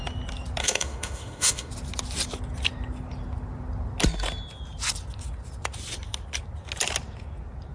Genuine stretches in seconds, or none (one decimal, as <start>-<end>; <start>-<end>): 0.0-0.6; 1.7-7.7